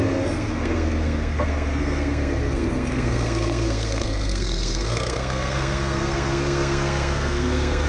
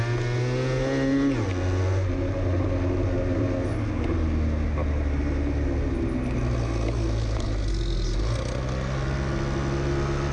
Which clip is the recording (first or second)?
second